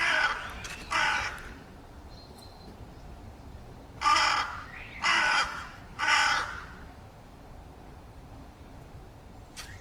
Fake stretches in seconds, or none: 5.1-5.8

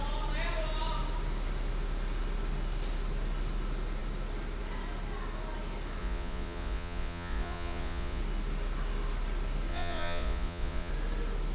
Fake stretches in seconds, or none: 6.0-8.2; 9.7-10.9